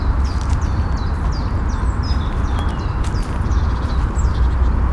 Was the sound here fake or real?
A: real